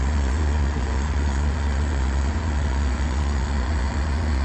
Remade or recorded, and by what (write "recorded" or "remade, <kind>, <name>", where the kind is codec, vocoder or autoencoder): remade, vocoder, Vocos